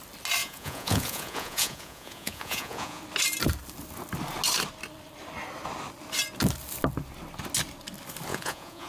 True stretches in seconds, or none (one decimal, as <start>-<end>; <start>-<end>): 0.0-0.4; 3.0-8.3